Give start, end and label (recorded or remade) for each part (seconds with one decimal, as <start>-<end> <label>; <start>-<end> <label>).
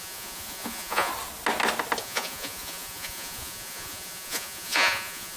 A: 0.0-1.1 remade; 1.1-2.0 recorded; 2.0-5.4 remade